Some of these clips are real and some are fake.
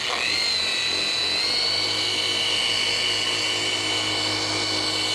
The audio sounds real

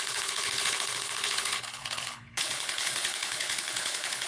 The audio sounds fake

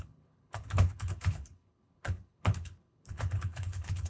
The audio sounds fake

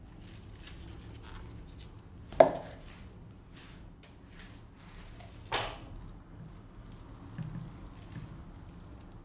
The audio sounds real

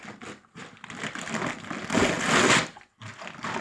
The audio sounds real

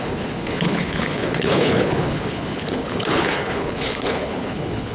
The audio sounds fake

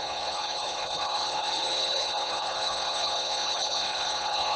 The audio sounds fake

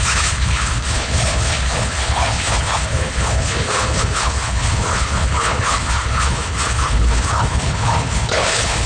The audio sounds fake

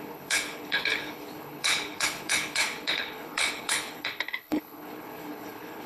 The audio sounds fake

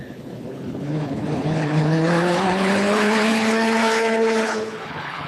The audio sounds fake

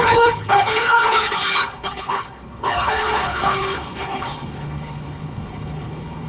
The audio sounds fake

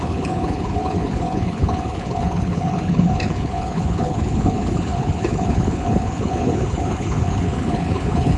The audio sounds fake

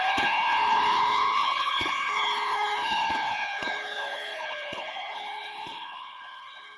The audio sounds fake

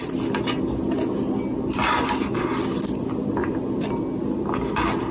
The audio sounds real